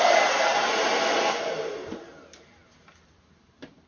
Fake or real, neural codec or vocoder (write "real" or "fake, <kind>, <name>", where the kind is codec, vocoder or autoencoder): real